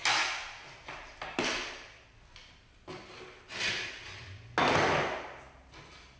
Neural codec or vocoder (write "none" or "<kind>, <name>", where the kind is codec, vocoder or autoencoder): none